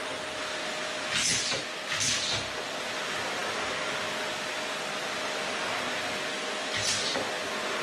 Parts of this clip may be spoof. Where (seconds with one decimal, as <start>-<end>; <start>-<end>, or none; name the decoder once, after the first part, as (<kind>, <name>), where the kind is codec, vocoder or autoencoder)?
none